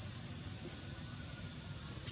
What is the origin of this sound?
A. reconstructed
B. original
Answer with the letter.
B